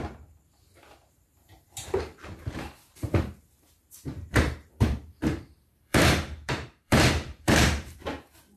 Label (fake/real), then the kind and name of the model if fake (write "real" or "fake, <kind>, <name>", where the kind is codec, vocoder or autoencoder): fake, vocoder, BigVGAN v2